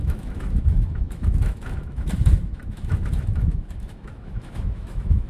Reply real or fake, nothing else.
fake